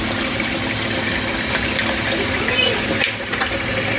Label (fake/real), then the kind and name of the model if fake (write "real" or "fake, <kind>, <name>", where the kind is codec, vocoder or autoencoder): real